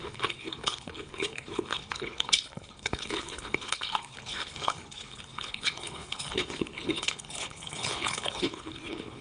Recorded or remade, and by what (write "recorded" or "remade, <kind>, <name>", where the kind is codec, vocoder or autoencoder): remade, codec, HILCodec